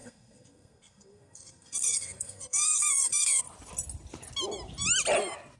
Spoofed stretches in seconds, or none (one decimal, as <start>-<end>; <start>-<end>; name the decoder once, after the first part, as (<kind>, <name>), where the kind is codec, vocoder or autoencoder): 0.0-3.4 (codec, SNAC)